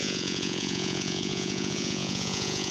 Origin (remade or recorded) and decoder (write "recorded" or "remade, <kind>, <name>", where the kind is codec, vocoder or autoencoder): remade, vocoder, Vocos